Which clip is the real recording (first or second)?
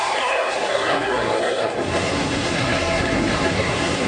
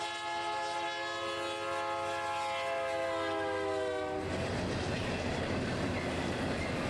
second